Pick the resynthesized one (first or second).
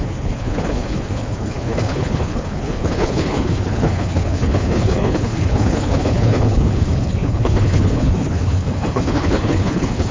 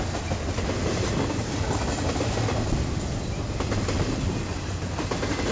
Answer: first